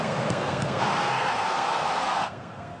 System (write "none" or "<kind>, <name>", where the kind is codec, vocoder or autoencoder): codec, SNAC